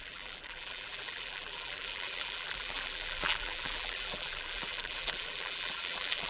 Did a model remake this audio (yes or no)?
yes